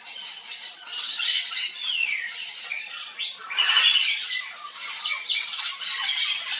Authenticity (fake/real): fake